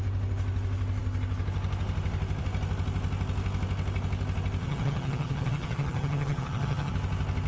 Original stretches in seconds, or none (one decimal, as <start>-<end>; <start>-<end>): 0.0-4.6; 6.9-7.5